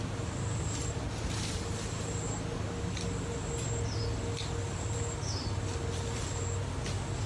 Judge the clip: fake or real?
real